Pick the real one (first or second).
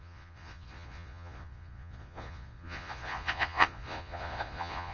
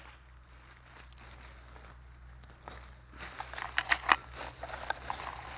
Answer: second